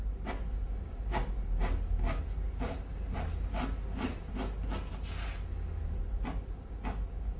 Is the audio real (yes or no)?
yes